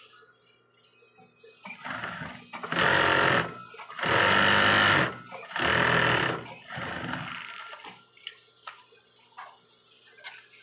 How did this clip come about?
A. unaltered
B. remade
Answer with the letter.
A